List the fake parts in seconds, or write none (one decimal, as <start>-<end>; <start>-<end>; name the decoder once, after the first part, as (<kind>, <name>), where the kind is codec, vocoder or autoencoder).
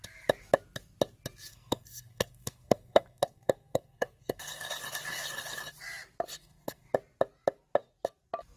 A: 1.5-4.7 (codec, SNAC); 6.4-6.9